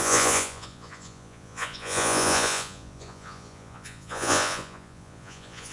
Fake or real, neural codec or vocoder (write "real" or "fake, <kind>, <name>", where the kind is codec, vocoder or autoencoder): fake, vocoder, Vocos